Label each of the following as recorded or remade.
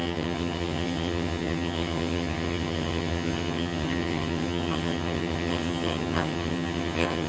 remade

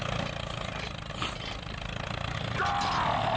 recorded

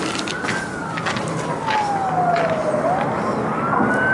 recorded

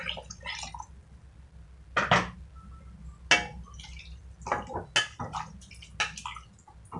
recorded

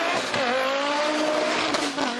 recorded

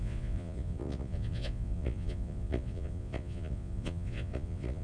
remade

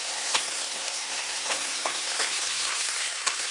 remade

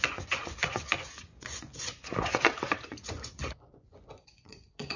remade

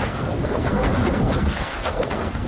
remade